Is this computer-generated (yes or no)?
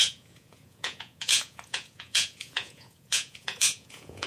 yes